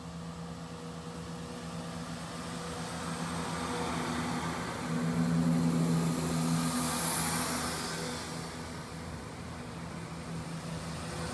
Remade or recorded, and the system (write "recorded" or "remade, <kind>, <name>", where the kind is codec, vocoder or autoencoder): recorded